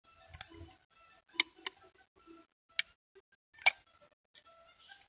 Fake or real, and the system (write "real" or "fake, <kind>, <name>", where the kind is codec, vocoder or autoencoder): real